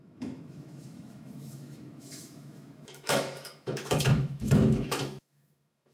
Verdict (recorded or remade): remade